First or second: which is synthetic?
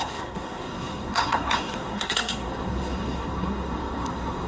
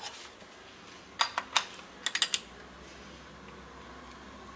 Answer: first